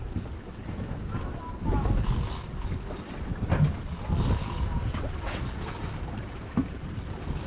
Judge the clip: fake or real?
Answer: real